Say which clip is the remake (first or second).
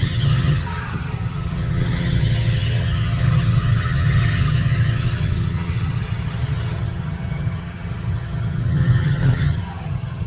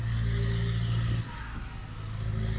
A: first